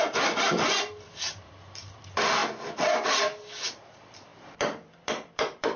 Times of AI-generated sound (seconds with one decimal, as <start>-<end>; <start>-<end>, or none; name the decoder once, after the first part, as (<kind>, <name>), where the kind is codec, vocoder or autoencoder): 0.0-2.4 (vocoder, BigVGAN v2); 3.9-5.8